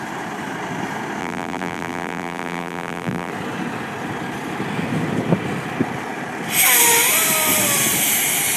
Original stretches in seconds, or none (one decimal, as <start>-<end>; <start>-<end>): 0.0-1.2; 3.3-8.6